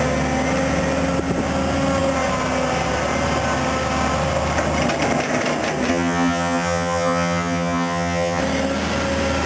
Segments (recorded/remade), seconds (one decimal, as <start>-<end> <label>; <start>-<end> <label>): 0.0-5.9 recorded; 5.9-8.4 remade; 8.4-9.5 recorded